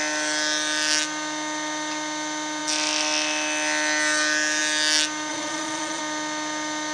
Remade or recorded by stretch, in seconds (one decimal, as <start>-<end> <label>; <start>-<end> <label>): 0.0-5.3 recorded; 5.3-6.0 remade; 6.0-6.9 recorded